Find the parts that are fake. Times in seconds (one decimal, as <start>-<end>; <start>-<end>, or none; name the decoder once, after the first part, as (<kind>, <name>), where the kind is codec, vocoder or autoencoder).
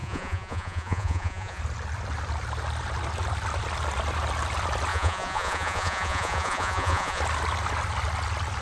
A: 0.0-1.6 (vocoder, Vocos); 4.9-7.2